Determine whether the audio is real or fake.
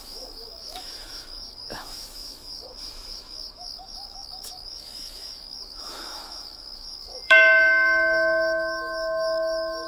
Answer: fake